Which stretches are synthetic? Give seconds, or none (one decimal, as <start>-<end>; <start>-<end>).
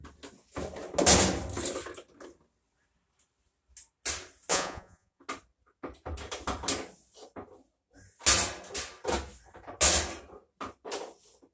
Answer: 4.5-5.2